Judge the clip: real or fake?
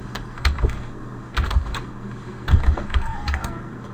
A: fake